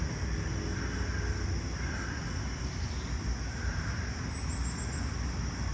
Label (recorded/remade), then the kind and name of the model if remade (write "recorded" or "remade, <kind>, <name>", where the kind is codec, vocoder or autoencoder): recorded